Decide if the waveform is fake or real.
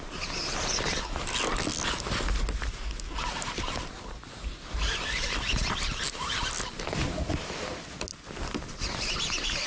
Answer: real